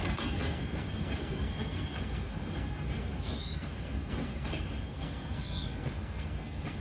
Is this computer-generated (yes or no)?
yes